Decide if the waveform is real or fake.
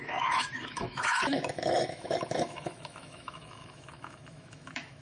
fake